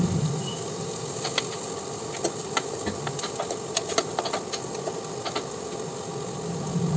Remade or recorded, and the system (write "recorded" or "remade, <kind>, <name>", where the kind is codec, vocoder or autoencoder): recorded